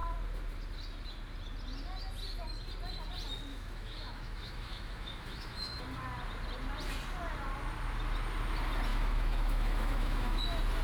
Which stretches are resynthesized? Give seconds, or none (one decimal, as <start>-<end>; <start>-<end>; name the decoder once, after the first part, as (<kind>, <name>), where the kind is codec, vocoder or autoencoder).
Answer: 3.5-5.8 (autoencoder, DAC-VAE); 8.9-10.4